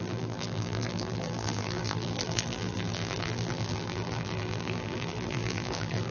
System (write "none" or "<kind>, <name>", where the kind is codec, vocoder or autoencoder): vocoder, BigVGAN v2